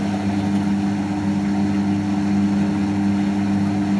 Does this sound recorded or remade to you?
recorded